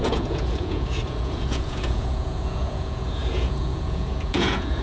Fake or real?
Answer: fake